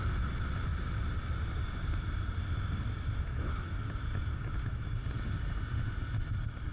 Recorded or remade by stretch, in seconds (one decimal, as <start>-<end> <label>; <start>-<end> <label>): 0.0-6.7 recorded